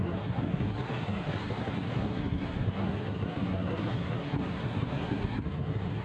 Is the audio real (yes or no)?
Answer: no